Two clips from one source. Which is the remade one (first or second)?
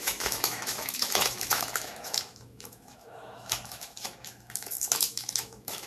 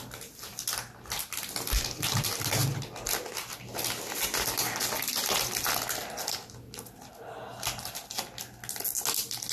first